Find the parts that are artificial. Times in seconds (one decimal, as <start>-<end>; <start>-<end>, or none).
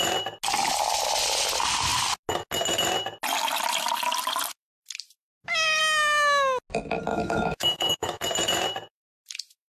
7.1-8.2